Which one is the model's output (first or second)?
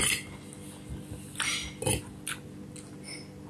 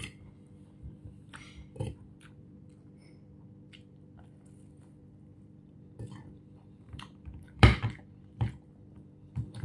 second